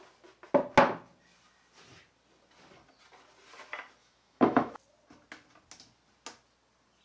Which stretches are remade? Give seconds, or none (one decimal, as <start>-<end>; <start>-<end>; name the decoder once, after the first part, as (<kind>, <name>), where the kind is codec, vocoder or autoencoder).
4.0-4.7 (autoencoder, DAC-VAE)